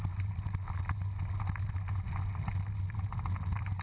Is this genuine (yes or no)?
yes